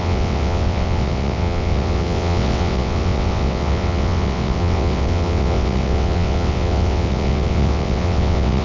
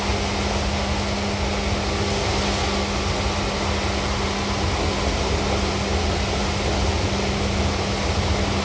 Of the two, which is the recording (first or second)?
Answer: second